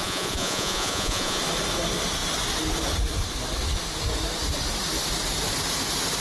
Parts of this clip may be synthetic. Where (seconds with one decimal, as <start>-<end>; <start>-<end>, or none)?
0.0-1.4

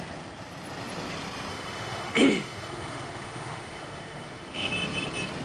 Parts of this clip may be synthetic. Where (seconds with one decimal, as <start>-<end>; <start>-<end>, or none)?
1.5-4.7

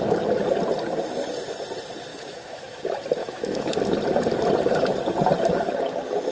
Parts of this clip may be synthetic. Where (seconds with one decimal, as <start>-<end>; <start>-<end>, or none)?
2.1-2.8; 3.2-3.8